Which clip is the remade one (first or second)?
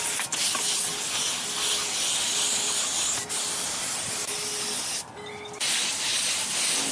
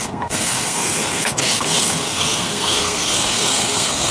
second